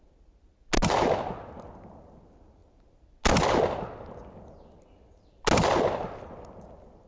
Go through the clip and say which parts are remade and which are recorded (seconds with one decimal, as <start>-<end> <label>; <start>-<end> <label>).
0.0-7.1 recorded